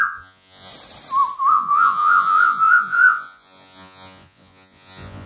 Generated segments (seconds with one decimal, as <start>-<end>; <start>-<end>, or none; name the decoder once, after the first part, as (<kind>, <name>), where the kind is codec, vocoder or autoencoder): 0.0-0.7 (vocoder, Vocos); 1.5-5.3